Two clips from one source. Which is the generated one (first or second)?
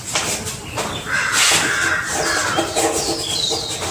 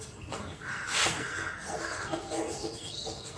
second